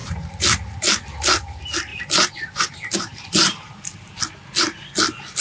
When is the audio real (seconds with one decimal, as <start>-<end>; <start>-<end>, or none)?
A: 0.9-1.9; 4.2-5.4